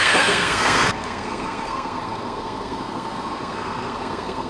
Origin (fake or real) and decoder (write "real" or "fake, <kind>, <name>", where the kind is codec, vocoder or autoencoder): fake, codec, SNAC